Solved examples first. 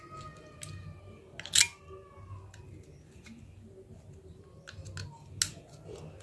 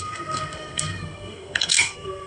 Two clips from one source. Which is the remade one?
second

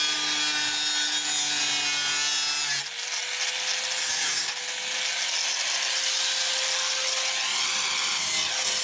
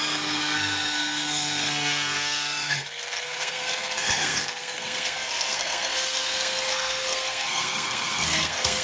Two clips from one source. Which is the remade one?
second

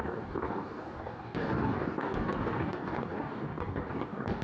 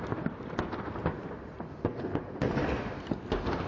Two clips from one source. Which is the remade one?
first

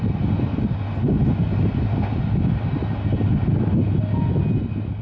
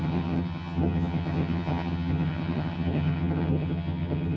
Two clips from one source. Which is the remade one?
second